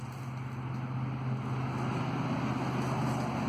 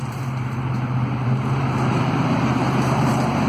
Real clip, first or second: first